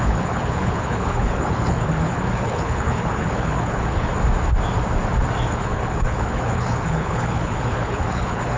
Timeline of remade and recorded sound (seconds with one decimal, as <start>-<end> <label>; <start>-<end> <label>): 0.0-4.1 remade; 4.1-5.4 recorded; 5.4-8.6 remade